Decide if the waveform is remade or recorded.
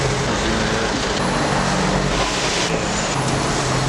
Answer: recorded